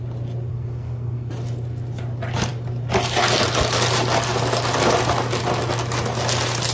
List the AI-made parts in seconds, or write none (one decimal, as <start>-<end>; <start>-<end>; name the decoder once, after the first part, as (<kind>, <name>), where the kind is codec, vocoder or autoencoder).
0.5-1.3 (codec, SNAC)